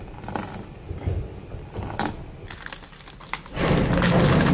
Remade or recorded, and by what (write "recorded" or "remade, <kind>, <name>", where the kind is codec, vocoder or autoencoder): recorded